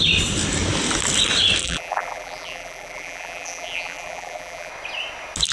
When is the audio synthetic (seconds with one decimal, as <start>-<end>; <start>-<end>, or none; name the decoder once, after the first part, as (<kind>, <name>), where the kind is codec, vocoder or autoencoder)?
1.6-4.7 (vocoder, BigVGAN v2)